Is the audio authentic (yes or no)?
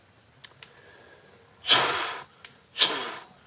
yes